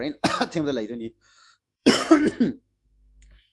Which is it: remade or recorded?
remade